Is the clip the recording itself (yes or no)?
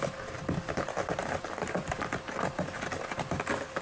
yes